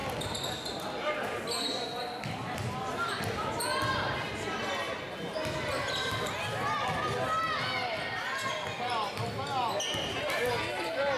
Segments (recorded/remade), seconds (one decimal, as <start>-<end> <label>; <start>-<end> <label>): 0.0-11.2 recorded